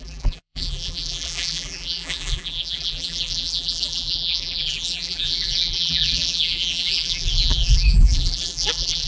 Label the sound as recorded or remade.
remade